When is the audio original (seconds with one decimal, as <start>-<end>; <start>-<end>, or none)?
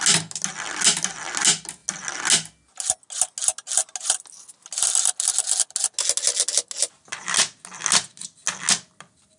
0.0-9.4